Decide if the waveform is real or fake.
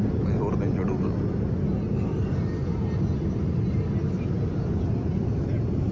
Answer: real